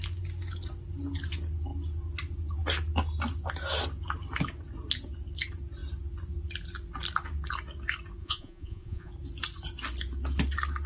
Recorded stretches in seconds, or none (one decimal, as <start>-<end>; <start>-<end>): 0.0-8.2; 9.1-10.9